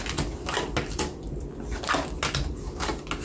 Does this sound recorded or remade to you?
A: recorded